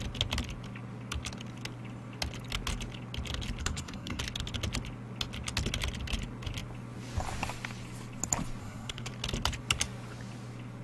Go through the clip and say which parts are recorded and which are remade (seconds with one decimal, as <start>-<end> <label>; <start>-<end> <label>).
0.0-3.6 recorded; 3.6-4.2 remade; 4.2-8.6 recorded; 8.6-9.1 remade; 9.1-10.8 recorded

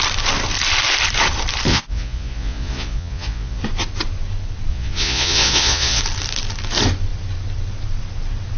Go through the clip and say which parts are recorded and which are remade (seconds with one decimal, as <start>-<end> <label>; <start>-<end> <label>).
0.0-1.7 recorded; 1.7-3.6 remade; 3.6-4.7 recorded; 4.7-6.0 remade; 6.0-8.6 recorded

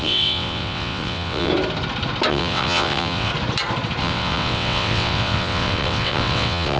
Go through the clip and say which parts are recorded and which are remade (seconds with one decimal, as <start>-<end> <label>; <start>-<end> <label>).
0.0-1.5 remade; 1.5-2.3 recorded; 2.3-3.3 remade; 3.3-4.0 recorded; 4.0-6.8 remade

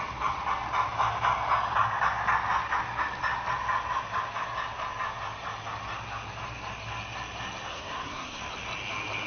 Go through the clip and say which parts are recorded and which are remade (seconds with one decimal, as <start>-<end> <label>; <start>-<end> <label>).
0.0-7.7 recorded; 7.7-8.4 remade; 8.4-9.3 recorded

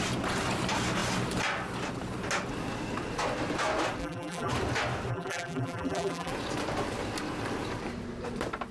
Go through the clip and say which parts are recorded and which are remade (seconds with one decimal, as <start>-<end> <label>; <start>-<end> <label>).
0.0-4.0 recorded; 4.0-4.5 remade; 4.5-5.1 recorded; 5.1-6.3 remade; 6.3-8.7 recorded

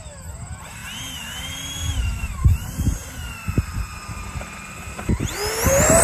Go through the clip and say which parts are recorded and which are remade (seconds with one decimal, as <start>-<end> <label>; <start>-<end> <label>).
0.0-6.0 recorded

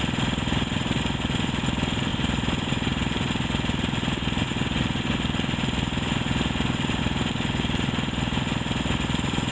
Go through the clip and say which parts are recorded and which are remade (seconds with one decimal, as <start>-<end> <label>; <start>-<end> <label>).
0.0-9.5 recorded

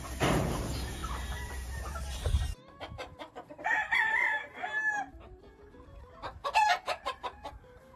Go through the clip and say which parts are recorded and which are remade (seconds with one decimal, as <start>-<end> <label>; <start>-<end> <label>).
0.0-8.0 remade